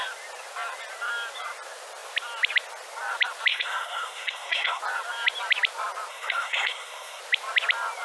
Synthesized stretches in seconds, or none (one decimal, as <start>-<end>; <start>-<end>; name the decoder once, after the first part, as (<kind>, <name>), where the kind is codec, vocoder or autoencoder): 3.5-4.8 (codec, SNAC); 6.1-7.2